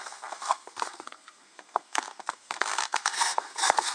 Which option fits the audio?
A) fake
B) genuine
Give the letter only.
A